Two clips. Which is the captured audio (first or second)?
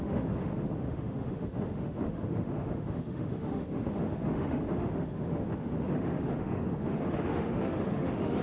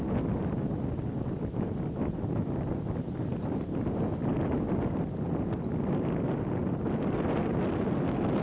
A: second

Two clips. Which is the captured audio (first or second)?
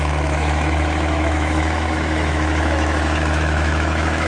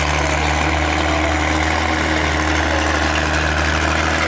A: second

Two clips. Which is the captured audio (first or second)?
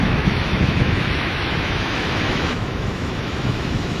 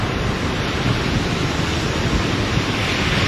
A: second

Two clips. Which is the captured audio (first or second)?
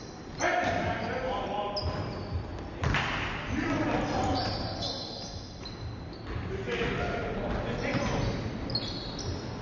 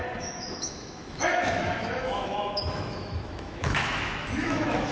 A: first